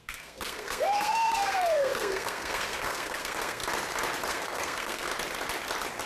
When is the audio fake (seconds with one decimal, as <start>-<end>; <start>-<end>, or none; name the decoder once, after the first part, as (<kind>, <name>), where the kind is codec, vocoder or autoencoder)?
0.0-3.6 (codec, SNAC); 4.3-5.1